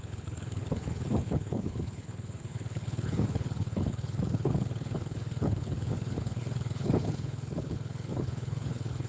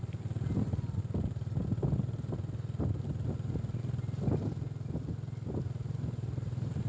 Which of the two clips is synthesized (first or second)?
first